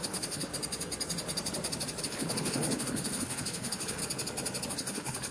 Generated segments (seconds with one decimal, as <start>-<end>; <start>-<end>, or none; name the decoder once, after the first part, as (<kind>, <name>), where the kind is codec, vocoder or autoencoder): 0.0-0.5 (codec, HILCodec); 2.0-4.0; 4.7-5.3

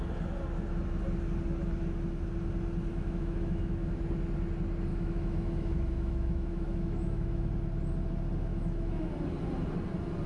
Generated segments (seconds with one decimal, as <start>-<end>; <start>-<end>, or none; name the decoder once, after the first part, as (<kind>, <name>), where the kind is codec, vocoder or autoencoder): 2.9-4.0 (autoencoder, DAC-VAE); 4.9-7.5; 8.5-9.1

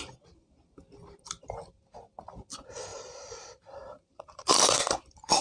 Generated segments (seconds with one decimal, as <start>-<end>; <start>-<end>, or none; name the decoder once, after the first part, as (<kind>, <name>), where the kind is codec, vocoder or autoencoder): 2.9-4.9 (vocoder, BigVGAN v2)

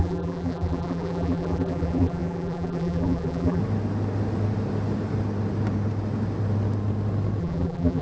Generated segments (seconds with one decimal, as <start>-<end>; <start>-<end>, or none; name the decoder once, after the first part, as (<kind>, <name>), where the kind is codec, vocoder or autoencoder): 0.0-3.6 (vocoder, BigVGAN v2); 7.4-8.0

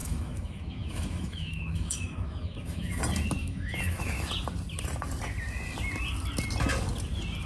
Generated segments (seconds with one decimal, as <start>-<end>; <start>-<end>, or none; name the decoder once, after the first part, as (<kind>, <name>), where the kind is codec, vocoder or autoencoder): 0.0-3.0 (autoencoder, DAC-VAE); 3.4-4.3